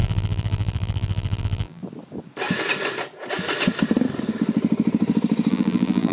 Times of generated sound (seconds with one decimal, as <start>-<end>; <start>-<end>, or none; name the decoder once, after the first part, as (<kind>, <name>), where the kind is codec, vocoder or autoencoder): 0.0-1.8 (vocoder, BigVGAN v2); 5.5-6.1